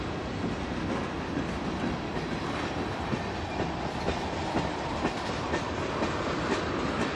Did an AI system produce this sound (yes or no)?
no